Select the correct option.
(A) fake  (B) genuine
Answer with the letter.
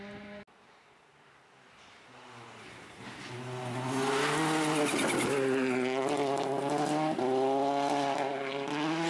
B